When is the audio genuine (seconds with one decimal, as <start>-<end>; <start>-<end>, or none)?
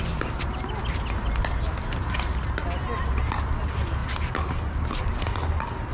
0.0-5.9